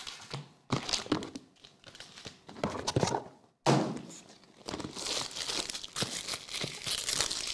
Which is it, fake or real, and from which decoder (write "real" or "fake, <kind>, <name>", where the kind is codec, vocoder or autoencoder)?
real